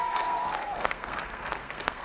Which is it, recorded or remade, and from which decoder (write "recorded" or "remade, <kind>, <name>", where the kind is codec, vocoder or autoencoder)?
remade, codec, SNAC